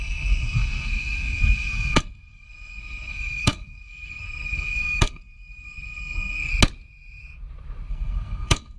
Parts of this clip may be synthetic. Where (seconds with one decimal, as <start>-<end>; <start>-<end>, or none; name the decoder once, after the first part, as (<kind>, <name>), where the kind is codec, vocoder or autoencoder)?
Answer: 0.0-6.5 (codec, SNAC); 7.9-8.8